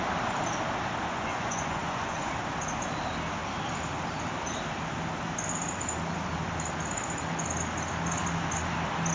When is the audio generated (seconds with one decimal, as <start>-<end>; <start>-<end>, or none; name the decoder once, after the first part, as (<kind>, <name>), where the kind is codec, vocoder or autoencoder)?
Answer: 1.1-2.3 (vocoder, Vocos)